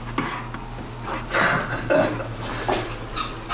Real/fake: real